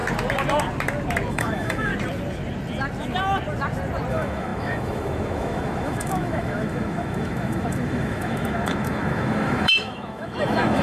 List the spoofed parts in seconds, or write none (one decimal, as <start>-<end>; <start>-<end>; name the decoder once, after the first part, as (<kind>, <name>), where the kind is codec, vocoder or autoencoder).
1.3-1.9 (autoencoder, DAC-VAE); 4.1-10.8